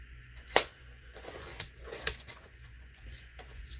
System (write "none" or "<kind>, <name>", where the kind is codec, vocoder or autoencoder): vocoder, Vocos